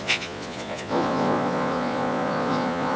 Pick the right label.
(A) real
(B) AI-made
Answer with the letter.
B